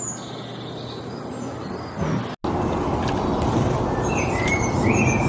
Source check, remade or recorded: recorded